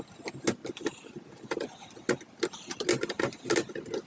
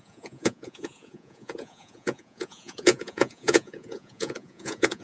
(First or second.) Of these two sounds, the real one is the first